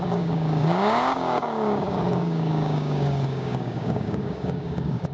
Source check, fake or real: fake